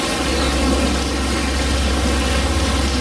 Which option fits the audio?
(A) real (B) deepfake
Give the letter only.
A